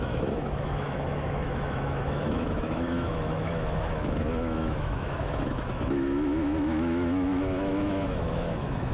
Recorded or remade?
remade